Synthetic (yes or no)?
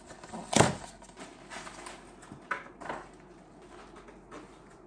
no